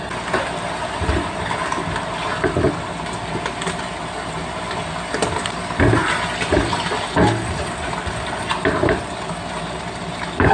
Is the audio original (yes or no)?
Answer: yes